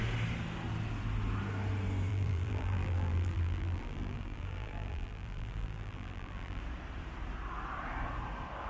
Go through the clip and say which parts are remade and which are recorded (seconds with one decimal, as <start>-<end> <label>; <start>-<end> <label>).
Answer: 0.0-2.1 recorded; 2.1-6.6 remade; 6.6-8.7 recorded